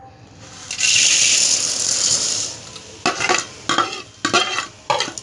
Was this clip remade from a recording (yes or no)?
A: no